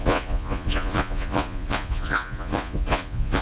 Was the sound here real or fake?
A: fake